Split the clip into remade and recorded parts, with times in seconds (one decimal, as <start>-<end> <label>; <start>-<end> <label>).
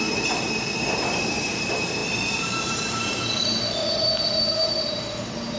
0.0-5.6 remade